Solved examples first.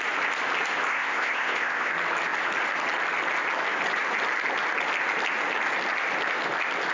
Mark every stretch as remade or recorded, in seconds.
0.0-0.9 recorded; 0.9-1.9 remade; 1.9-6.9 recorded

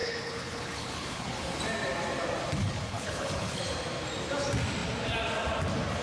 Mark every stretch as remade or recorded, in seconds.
0.0-1.6 remade; 1.6-2.6 recorded; 2.6-3.6 remade; 3.6-6.0 recorded

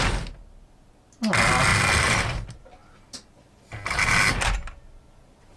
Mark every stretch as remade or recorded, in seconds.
0.0-5.6 recorded

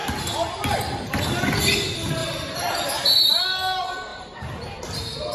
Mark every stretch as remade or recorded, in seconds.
0.0-2.2 recorded; 2.2-3.3 remade; 3.3-4.1 recorded; 4.1-4.8 remade; 4.8-5.3 recorded